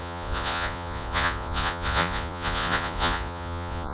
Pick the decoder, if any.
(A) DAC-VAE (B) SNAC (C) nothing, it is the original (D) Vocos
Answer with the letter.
D